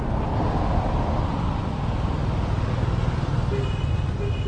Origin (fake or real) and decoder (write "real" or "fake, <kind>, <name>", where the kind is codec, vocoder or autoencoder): real